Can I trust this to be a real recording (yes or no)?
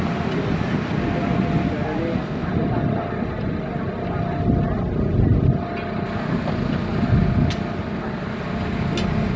yes